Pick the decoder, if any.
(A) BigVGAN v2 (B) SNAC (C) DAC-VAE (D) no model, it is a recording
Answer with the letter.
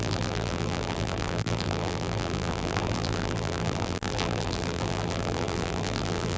A